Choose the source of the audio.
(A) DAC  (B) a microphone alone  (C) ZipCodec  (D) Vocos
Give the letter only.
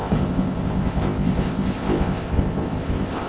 C